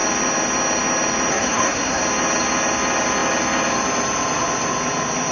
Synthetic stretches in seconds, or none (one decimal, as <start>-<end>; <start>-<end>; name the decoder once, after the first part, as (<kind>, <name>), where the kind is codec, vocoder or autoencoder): 1.3-2.0 (codec, SNAC)